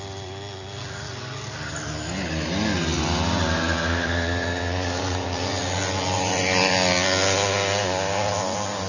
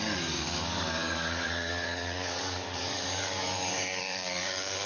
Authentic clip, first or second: first